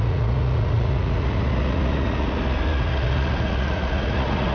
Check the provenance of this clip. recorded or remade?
remade